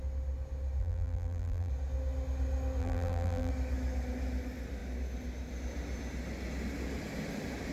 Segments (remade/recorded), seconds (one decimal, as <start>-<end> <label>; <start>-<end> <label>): 0.0-0.8 recorded; 0.8-1.7 remade; 1.7-2.8 recorded; 2.8-3.5 remade; 3.5-7.7 recorded